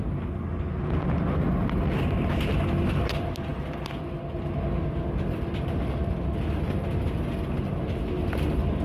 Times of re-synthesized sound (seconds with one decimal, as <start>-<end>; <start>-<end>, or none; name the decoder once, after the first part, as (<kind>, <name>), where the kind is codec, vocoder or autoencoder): none